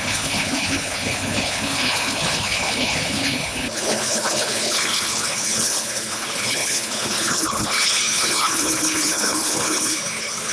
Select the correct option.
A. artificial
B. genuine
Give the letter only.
A